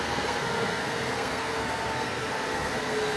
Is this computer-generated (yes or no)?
yes